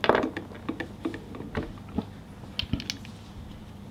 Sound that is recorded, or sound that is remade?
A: recorded